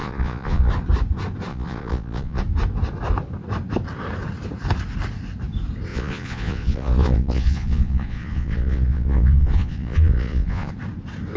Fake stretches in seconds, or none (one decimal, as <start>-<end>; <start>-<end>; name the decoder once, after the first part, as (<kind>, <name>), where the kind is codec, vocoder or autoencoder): 0.0-0.7 (vocoder, Vocos); 1.5-2.4; 5.9-10.7